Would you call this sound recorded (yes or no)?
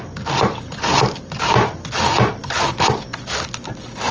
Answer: yes